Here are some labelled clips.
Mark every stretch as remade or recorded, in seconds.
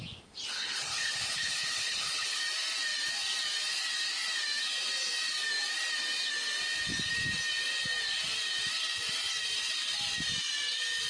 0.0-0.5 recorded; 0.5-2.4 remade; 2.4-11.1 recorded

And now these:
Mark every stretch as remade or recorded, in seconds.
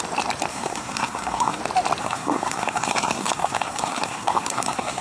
0.0-0.5 recorded; 0.5-1.6 remade; 1.6-2.0 recorded; 2.0-5.0 remade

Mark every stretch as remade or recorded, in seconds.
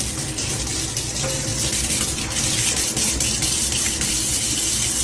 0.0-5.0 recorded